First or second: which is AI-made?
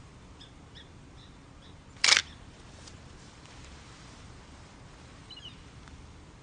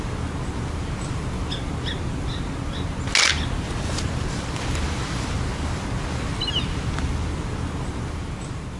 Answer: first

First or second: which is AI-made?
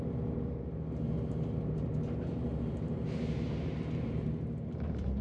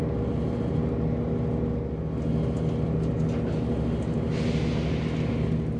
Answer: first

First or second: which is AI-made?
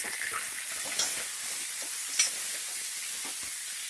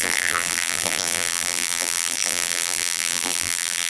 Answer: second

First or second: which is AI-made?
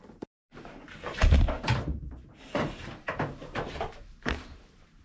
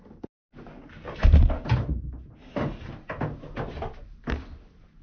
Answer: first